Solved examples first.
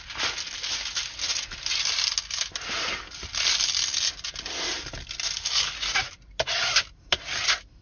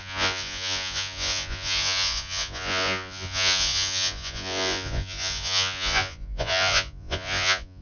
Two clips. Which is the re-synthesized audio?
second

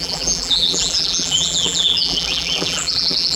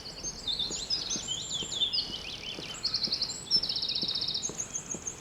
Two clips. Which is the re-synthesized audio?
first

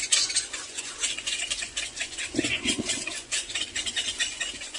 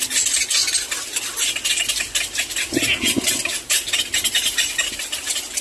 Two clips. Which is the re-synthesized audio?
first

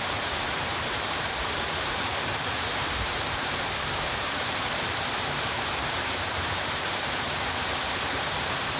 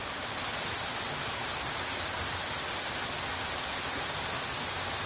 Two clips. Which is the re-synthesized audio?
first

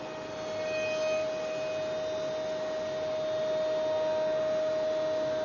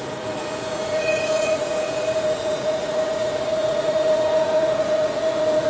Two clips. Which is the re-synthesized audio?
second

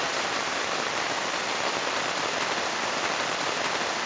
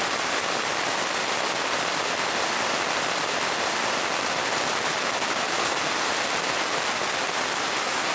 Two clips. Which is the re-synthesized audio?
first